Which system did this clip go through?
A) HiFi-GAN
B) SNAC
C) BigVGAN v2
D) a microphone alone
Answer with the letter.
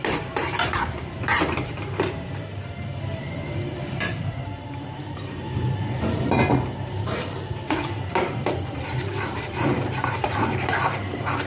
C